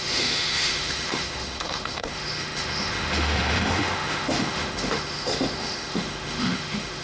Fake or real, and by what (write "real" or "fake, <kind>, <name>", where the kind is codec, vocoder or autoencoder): fake, autoencoder, DAC-VAE